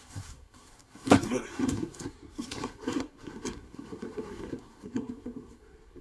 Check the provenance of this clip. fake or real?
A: fake